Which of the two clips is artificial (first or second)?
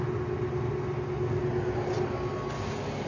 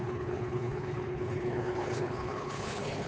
second